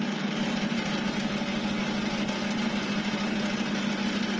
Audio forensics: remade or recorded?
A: recorded